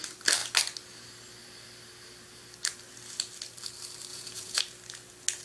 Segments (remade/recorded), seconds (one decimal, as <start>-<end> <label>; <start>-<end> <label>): 0.0-4.1 recorded; 4.1-4.6 remade; 4.6-5.4 recorded